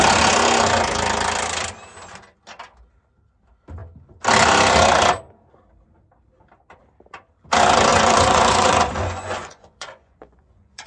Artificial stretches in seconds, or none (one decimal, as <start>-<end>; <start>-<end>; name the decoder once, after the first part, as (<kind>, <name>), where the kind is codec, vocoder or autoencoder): 7.9-10.9 (vocoder, Vocos)